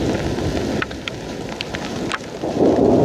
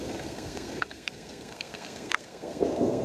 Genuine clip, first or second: first